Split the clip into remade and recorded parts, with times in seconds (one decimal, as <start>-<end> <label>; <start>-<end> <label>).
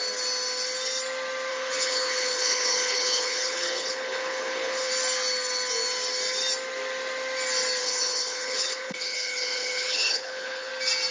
0.0-1.5 recorded; 1.5-4.9 remade; 4.9-7.8 recorded; 7.8-10.7 remade; 10.7-11.1 recorded